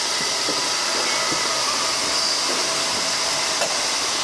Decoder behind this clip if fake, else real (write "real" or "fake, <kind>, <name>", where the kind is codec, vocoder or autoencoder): real